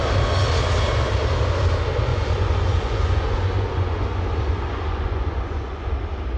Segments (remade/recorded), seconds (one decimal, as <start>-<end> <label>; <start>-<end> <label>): 0.0-2.1 recorded; 2.1-5.9 remade; 5.9-6.4 recorded